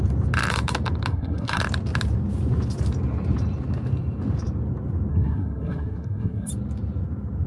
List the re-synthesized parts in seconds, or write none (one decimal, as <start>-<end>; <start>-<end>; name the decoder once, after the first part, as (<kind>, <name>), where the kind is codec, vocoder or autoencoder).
1.1-1.6 (codec, SNAC); 5.1-6.5